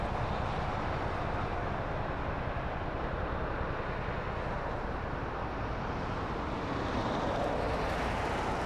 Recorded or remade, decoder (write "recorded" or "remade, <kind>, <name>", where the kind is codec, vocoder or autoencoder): recorded